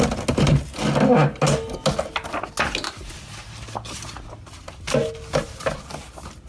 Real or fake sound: real